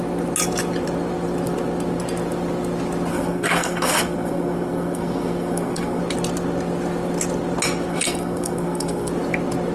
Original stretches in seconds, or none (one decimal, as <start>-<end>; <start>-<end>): 0.0-3.1; 6.0-7.9; 9.1-9.7

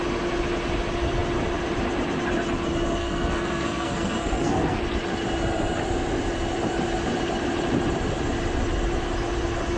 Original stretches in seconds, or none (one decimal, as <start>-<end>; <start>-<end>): 0.0-3.0; 4.8-9.8